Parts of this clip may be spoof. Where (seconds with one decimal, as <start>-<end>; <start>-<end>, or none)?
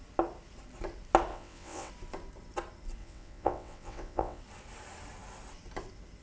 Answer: 1.3-1.9; 3.0-4.4